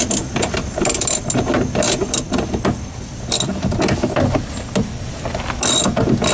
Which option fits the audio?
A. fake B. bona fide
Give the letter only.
B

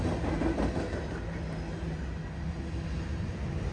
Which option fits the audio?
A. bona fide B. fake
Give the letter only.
A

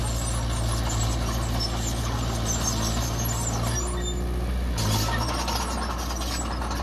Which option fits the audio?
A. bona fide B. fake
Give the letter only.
A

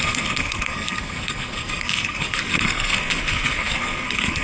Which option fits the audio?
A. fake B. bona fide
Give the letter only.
A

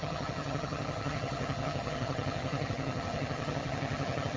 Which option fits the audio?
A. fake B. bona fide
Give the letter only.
A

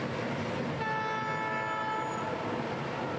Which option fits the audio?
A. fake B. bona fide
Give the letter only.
B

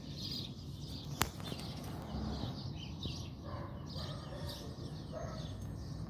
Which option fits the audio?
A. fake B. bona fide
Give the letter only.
B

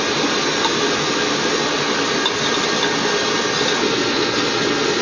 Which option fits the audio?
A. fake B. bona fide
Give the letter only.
B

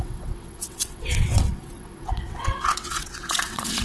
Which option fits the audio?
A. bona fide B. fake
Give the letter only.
B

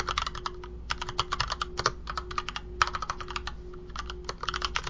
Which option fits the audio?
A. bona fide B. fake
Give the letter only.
A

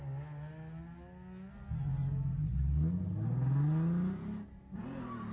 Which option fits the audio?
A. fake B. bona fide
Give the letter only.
B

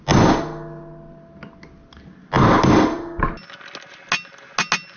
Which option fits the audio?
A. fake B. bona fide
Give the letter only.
B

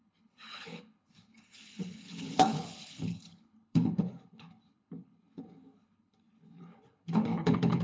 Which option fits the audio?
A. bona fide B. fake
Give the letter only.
B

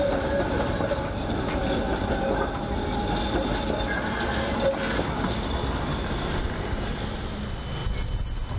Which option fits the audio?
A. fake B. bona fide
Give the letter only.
B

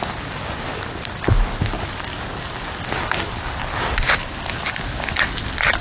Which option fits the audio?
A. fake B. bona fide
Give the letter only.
B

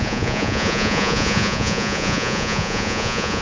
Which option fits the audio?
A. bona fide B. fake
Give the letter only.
B